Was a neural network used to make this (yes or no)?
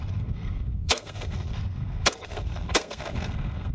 yes